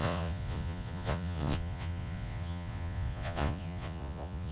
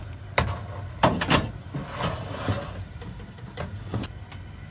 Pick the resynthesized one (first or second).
first